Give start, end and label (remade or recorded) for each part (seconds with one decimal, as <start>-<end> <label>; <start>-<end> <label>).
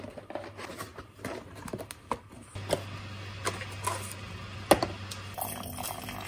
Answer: 0.0-0.9 recorded; 0.9-1.9 remade; 1.9-6.3 recorded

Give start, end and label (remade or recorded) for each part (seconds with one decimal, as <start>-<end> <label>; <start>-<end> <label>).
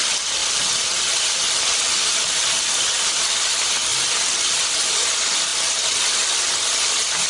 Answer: 0.0-0.4 recorded; 0.4-3.0 remade; 3.0-7.3 recorded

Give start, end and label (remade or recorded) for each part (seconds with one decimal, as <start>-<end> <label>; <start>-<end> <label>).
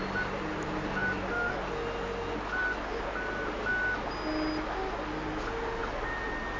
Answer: 0.0-6.6 recorded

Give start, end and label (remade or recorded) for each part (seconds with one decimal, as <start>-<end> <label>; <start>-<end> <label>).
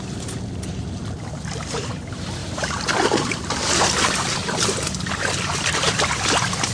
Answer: 0.0-2.4 recorded; 2.4-6.7 remade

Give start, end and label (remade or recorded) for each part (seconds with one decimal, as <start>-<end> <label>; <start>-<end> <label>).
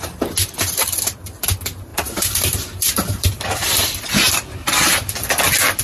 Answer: 0.0-1.9 recorded; 1.9-4.0 remade; 4.0-5.8 recorded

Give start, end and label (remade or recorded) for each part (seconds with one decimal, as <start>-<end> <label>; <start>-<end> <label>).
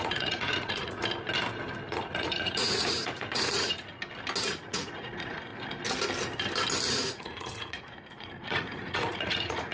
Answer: 0.0-1.0 remade; 1.0-1.9 recorded; 1.9-3.9 remade; 3.9-4.5 recorded; 4.5-5.5 remade; 5.5-6.9 recorded; 6.9-9.7 remade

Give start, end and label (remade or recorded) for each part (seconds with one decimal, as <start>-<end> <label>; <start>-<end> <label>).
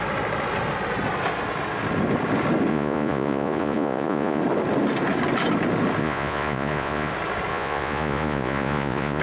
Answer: 0.0-2.7 recorded; 2.7-4.4 remade; 4.4-6.0 recorded; 6.0-7.1 remade; 7.1-7.5 recorded; 7.5-9.2 remade